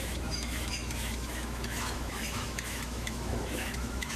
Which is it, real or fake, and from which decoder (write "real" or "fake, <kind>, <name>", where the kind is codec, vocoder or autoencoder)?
fake, autoencoder, DAC-VAE